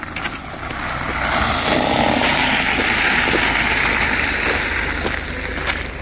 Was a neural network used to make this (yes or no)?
no